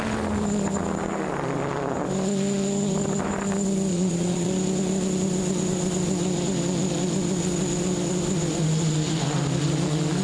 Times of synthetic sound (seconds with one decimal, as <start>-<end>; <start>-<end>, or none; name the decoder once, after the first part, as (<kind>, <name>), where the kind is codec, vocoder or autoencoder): 3.9-4.5 (vocoder, Vocos)